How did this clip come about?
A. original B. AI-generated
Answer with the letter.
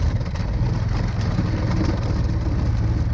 A